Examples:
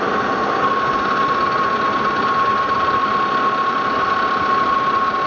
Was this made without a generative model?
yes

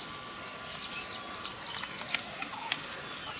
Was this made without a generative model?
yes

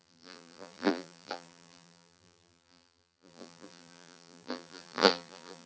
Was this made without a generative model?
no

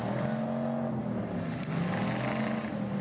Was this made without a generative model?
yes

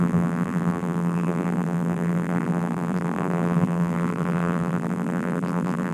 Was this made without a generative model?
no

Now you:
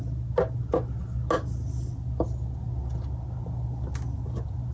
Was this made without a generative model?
yes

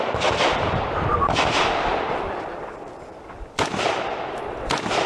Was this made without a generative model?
no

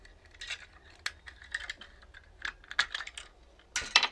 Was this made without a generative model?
yes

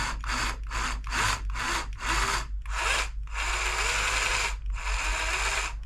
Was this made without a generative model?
yes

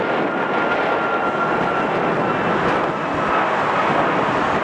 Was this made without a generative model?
yes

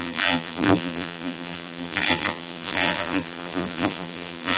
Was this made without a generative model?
no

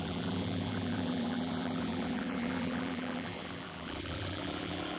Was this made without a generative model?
no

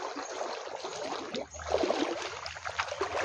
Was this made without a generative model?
yes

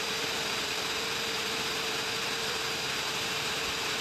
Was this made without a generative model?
no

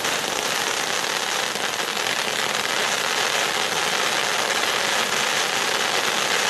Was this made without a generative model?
no